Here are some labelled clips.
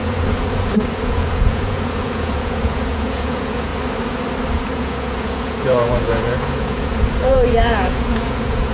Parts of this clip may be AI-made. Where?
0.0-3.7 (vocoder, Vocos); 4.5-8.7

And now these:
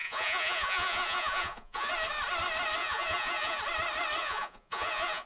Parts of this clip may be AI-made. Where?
0.0-1.9 (vocoder, Vocos); 2.8-3.6; 4.2-5.3

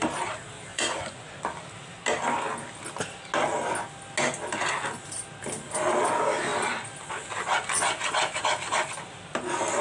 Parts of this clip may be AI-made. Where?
0.7-1.4 (vocoder, Vocos)

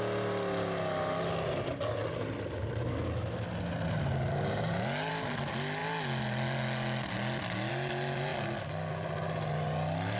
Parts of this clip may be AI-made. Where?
none

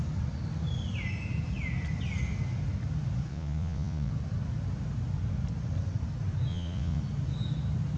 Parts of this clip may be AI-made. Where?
3.3-4.1 (vocoder, Vocos); 6.5-7.0

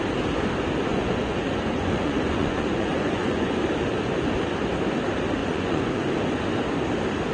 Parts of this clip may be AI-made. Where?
0.9-3.6 (vocoder, Vocos); 5.4-6.1